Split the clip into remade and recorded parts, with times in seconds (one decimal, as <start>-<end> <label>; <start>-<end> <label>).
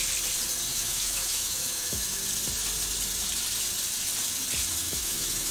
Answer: 0.0-0.7 recorded; 0.7-2.2 remade; 2.2-4.8 recorded; 4.8-5.5 remade